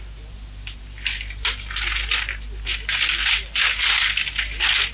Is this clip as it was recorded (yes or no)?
yes